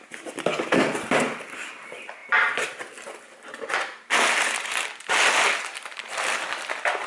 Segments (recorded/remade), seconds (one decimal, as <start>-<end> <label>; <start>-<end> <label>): 0.0-7.1 recorded